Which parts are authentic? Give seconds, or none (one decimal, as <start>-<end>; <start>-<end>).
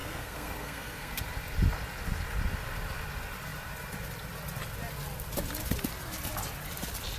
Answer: 1.2-7.2